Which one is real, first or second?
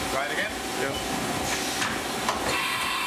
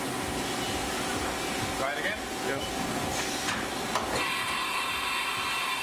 second